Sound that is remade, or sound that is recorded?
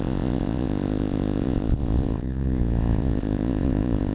remade